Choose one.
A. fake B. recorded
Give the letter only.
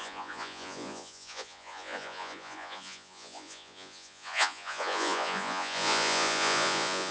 A